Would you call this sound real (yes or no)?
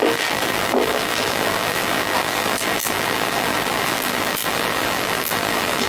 no